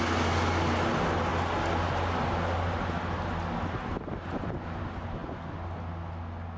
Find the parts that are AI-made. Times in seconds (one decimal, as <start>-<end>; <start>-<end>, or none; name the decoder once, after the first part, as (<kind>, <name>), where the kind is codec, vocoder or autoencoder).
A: none